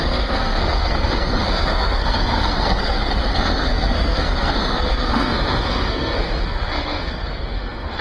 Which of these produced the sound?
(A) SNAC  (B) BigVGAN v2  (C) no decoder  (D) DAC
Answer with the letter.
A